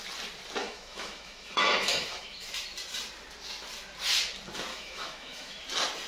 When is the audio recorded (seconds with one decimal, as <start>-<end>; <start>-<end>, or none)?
0.0-0.6; 2.5-4.7; 5.6-6.1